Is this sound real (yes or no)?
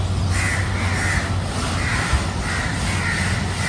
yes